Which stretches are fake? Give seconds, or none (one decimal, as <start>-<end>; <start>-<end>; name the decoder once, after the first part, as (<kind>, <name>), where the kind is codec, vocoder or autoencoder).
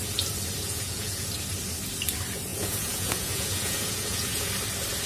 0.6-1.3 (vocoder, Vocos); 2.5-4.5